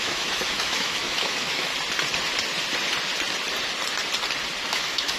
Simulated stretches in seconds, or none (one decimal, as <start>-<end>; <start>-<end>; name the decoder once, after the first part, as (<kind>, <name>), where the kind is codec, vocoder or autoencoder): 0.0-1.7 (autoencoder, DAC-VAE); 4.7-5.2